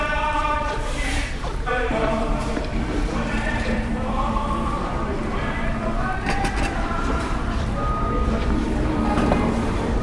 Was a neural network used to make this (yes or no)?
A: yes